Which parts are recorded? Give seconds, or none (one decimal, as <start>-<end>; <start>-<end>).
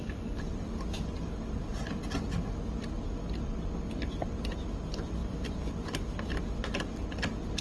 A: 0.0-7.6